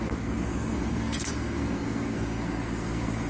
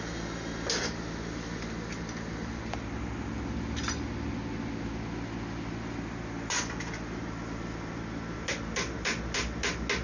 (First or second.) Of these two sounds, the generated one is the first